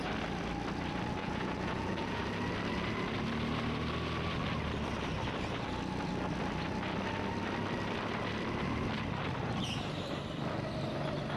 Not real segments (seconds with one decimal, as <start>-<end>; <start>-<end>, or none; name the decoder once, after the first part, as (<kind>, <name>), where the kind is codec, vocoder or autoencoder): 1.2-2.2 (vocoder, Vocos)

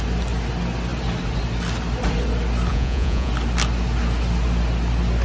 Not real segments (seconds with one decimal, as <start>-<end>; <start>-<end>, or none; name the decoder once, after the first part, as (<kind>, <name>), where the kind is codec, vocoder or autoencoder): 2.7-3.3 (vocoder, Vocos)

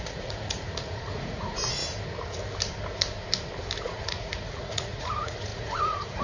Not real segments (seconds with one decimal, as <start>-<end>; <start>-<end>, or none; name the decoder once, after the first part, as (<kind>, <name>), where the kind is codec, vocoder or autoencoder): 0.0-1.8 (vocoder, Vocos); 3.8-6.2